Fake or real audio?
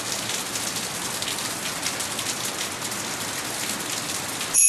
real